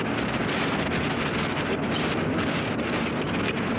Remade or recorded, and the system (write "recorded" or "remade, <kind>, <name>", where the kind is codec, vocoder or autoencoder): recorded